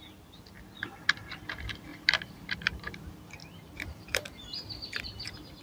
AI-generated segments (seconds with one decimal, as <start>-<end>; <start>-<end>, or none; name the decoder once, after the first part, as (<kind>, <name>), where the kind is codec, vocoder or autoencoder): 1.9-3.0 (vocoder, BigVGAN v2); 3.4-5.0